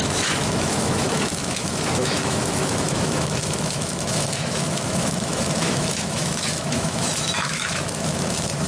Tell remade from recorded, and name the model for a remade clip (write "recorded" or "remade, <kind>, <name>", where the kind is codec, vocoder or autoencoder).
remade, autoencoder, DAC-VAE